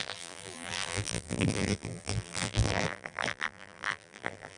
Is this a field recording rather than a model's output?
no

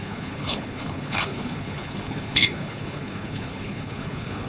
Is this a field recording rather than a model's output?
no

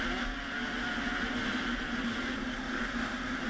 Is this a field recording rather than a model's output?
yes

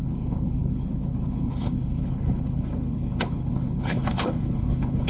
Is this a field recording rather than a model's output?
no